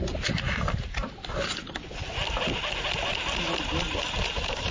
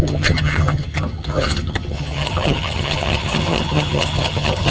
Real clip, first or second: first